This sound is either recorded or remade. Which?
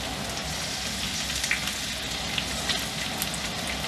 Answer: recorded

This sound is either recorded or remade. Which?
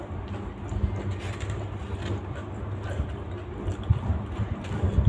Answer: recorded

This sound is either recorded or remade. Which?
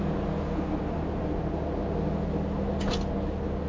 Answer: recorded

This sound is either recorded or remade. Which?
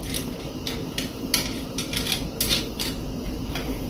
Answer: recorded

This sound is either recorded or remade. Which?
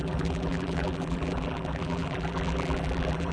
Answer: remade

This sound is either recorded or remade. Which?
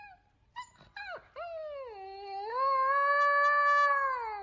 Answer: recorded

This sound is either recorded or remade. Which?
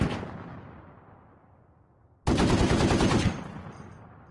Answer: recorded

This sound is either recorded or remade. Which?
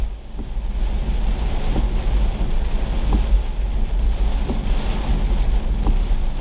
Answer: recorded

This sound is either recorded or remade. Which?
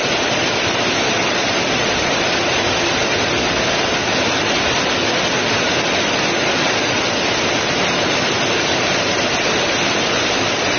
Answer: remade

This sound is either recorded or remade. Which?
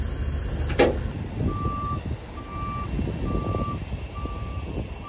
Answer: recorded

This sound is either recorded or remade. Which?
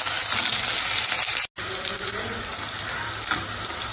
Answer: recorded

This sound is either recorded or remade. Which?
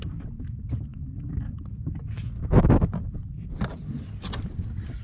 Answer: recorded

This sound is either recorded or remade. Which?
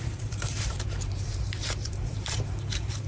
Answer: remade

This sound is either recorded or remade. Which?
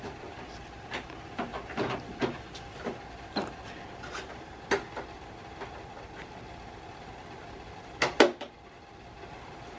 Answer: recorded